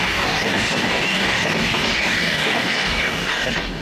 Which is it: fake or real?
fake